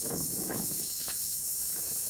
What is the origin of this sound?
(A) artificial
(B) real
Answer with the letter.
A